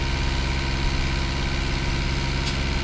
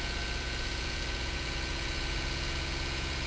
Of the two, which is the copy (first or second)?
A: second